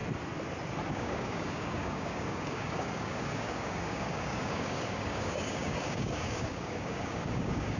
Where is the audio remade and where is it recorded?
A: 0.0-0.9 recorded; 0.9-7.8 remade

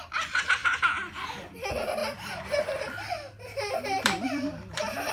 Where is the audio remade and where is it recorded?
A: 0.0-0.6 recorded; 0.6-1.3 remade; 1.3-2.0 recorded; 2.0-5.1 remade

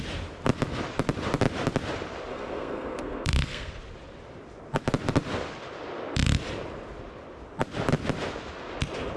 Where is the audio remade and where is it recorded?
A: 0.0-2.3 recorded; 2.3-3.7 remade; 3.7-9.2 recorded

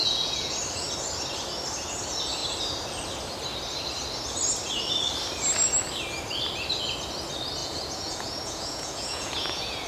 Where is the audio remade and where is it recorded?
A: 0.0-0.5 remade; 0.5-7.6 recorded; 7.6-9.9 remade